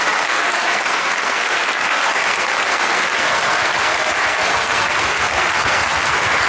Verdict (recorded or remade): remade